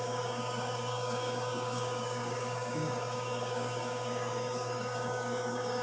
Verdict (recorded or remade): remade